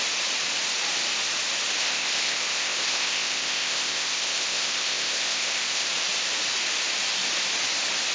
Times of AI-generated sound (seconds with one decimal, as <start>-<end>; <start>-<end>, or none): 1.8-5.9